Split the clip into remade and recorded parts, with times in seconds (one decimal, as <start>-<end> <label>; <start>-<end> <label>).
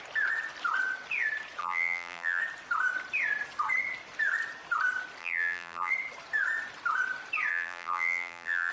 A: 0.0-1.6 recorded; 1.6-2.4 remade; 2.4-5.2 recorded; 5.2-5.9 remade; 5.9-7.5 recorded; 7.5-8.7 remade